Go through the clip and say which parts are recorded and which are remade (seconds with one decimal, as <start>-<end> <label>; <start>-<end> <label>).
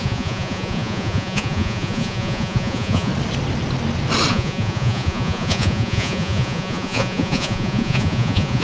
0.0-3.1 remade; 3.1-4.3 recorded; 4.3-8.6 remade